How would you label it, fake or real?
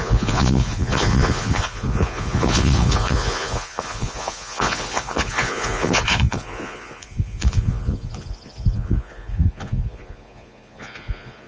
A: fake